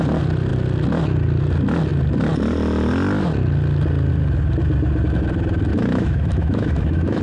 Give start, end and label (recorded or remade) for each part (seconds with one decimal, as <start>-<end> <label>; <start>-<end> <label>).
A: 0.0-5.7 recorded; 5.7-7.2 remade